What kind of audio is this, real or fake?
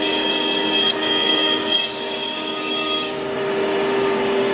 fake